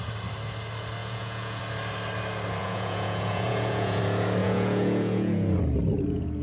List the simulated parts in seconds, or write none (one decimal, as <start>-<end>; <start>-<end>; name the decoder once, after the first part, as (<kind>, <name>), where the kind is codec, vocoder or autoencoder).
1.0-1.6 (vocoder, Vocos); 2.6-4.0; 4.4-5.6

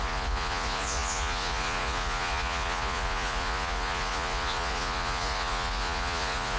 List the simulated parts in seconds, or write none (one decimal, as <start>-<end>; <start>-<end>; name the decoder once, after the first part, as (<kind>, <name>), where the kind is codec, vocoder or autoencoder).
0.0-6.6 (vocoder, Vocos)

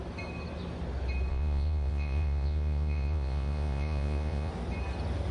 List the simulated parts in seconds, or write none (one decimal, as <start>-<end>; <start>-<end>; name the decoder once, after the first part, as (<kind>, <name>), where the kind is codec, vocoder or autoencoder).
1.3-4.5 (vocoder, Vocos)

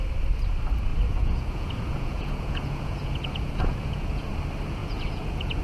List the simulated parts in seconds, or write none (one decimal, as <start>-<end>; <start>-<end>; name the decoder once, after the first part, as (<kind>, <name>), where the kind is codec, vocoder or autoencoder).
0.9-4.3 (vocoder, Vocos); 4.8-5.6

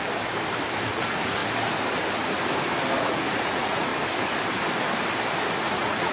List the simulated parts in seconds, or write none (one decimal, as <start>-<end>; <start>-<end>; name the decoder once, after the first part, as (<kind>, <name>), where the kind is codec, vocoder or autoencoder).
0.9-1.4 (vocoder, Vocos); 3.0-3.9; 5.6-6.1

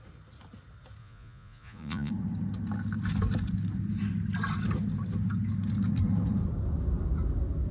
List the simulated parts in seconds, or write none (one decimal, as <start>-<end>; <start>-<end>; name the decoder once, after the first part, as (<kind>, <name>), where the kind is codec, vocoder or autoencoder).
1.0-2.1 (vocoder, Vocos)

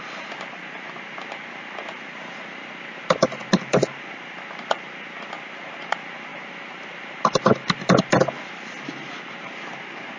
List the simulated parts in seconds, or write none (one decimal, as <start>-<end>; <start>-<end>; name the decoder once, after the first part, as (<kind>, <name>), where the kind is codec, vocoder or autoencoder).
none